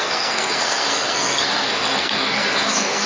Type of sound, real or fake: fake